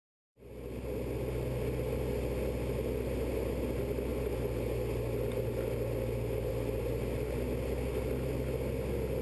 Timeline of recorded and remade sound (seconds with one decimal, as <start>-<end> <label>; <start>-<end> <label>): 0.0-9.2 recorded